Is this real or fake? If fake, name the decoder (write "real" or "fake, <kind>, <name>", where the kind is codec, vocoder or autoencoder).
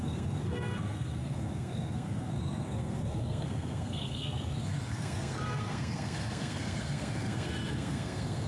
fake, codec, SNAC